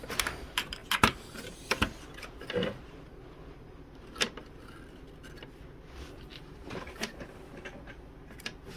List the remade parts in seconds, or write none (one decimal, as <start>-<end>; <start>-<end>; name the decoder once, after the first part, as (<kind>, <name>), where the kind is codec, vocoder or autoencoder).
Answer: 6.3-7.8 (vocoder, BigVGAN v2)